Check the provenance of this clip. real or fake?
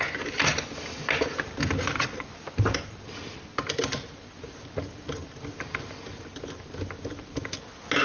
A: real